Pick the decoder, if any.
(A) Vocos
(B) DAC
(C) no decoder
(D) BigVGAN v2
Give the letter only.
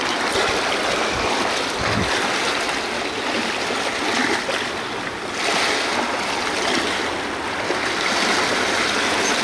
C